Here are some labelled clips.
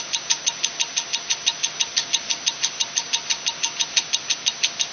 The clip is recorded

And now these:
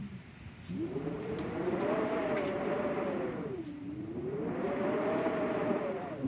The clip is remade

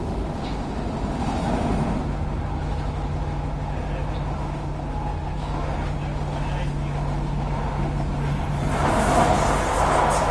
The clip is recorded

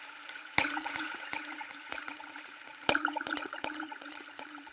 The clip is remade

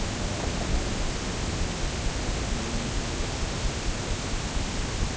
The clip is recorded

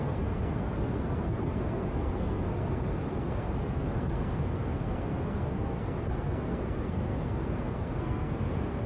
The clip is remade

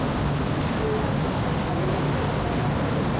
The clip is recorded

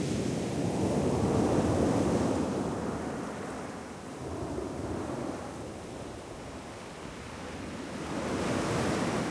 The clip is recorded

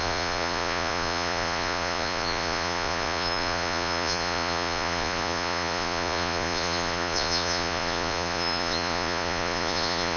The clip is remade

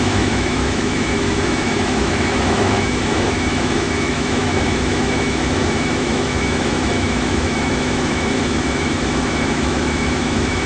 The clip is remade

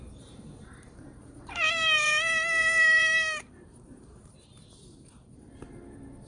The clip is remade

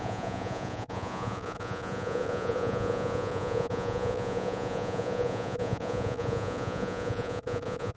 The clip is remade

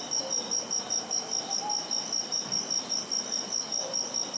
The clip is recorded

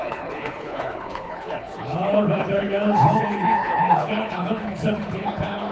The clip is remade